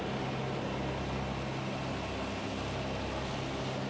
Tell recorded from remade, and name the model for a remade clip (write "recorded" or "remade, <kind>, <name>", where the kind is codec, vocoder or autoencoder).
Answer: recorded